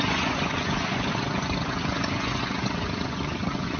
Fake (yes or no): yes